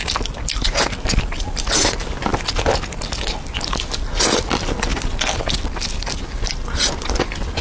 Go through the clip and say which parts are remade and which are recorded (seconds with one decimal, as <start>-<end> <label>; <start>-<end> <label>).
0.0-7.6 recorded

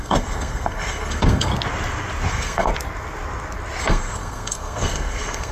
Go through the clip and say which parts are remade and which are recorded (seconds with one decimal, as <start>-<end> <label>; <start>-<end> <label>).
0.0-1.5 remade; 1.5-2.3 recorded; 2.3-2.7 remade; 2.7-3.8 recorded; 3.8-5.5 remade

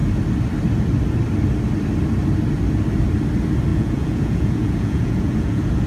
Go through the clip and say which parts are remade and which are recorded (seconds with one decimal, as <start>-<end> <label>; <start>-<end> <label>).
0.0-3.7 recorded; 3.7-5.9 remade